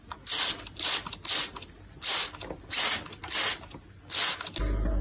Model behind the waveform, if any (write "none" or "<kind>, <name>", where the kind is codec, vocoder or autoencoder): none